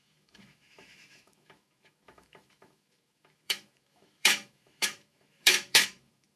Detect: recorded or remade remade